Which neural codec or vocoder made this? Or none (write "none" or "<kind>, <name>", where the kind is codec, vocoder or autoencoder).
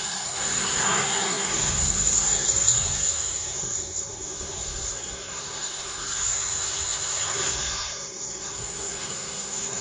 codec, SNAC